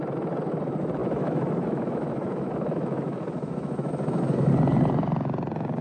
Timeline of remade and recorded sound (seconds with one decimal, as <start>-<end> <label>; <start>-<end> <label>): 0.0-1.0 recorded; 1.0-4.5 remade; 4.5-5.8 recorded